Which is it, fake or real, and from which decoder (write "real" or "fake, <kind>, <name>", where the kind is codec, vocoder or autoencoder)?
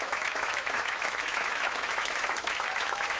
fake, autoencoder, DAC-VAE